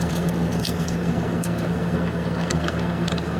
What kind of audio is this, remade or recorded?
remade